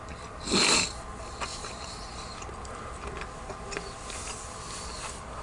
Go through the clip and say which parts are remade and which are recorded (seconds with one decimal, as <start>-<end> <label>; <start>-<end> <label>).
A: 0.0-1.5 recorded; 1.5-3.1 remade; 3.1-5.4 recorded